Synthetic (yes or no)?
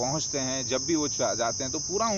no